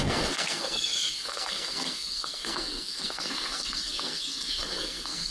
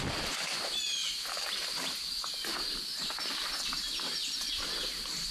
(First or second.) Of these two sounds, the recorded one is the second